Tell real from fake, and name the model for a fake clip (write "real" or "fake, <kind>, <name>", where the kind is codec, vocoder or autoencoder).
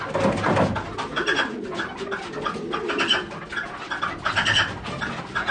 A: real